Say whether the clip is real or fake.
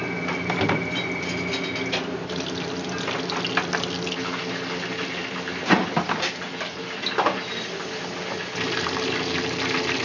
real